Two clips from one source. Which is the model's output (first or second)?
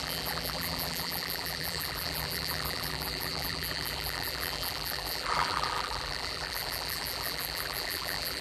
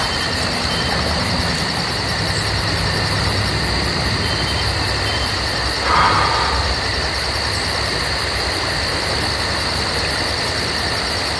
first